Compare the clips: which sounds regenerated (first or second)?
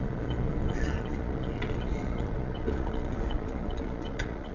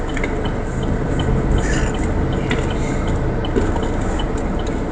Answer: first